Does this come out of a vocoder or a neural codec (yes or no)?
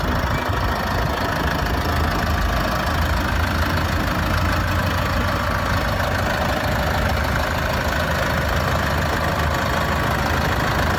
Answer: no